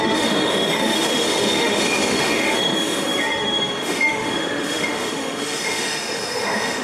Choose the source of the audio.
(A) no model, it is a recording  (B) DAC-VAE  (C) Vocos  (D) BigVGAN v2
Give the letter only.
B